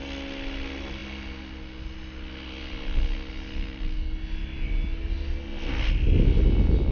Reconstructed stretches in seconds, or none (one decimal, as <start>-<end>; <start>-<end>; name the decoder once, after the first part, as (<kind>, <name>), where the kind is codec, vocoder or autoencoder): none